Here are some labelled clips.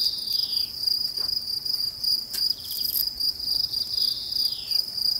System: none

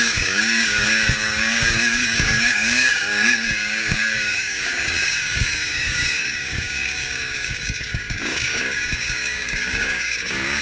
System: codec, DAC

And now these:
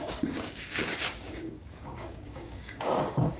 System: codec, DAC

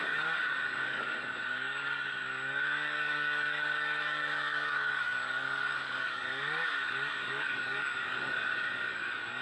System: codec, DAC